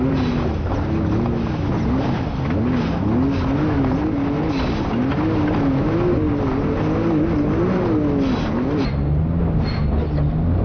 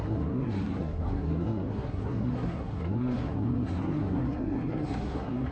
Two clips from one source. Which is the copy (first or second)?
second